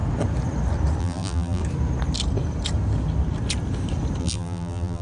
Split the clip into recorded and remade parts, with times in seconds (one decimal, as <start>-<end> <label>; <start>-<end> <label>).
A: 0.0-1.0 recorded; 1.0-1.6 remade; 1.6-4.2 recorded; 4.2-5.0 remade